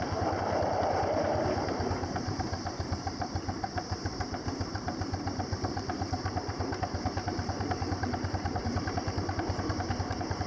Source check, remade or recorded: remade